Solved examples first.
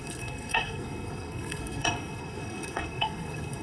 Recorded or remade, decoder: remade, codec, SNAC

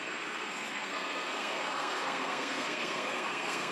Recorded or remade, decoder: remade, codec, SNAC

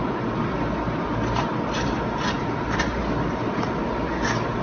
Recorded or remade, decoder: remade, vocoder, BigVGAN v2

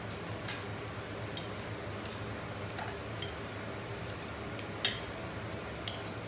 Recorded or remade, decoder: recorded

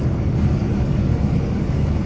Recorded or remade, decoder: remade, codec, DAC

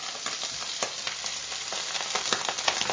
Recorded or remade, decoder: recorded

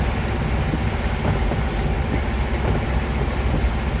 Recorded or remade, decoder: recorded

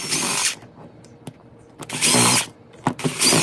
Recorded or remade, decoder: recorded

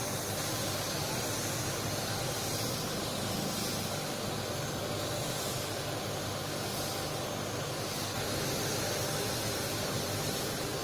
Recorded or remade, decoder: recorded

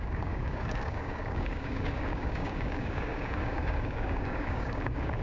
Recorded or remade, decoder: remade, codec, DAC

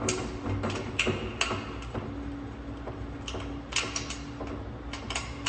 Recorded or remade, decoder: recorded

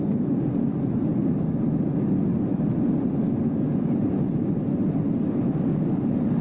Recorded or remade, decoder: recorded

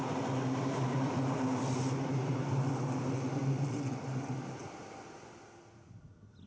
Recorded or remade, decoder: recorded